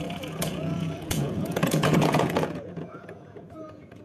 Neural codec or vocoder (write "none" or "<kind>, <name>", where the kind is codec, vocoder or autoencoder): vocoder, Vocos